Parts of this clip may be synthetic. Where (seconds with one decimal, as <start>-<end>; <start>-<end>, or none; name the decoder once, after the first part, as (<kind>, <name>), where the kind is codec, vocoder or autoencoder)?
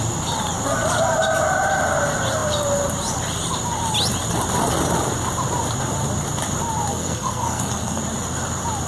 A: 6.9-8.0 (codec, SNAC)